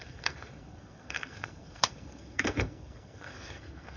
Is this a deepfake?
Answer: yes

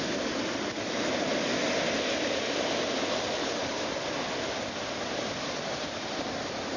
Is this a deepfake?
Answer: no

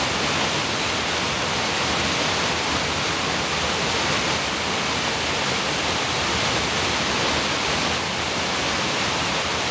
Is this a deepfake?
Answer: no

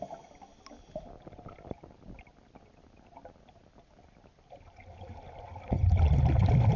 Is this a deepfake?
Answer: no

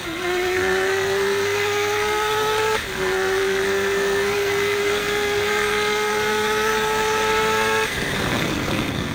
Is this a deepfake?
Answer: yes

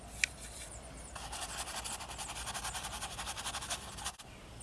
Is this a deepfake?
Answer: no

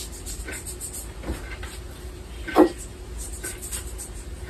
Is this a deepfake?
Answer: no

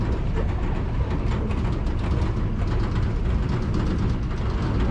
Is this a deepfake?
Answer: no